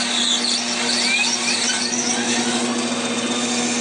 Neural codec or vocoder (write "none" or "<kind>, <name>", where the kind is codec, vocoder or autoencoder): none